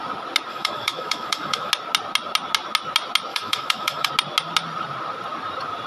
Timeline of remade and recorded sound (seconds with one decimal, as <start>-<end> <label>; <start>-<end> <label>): 0.0-0.5 recorded; 0.5-1.7 remade; 1.7-3.3 recorded; 3.3-4.1 remade; 4.1-5.9 recorded